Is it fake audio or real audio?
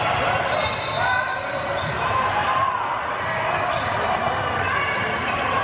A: real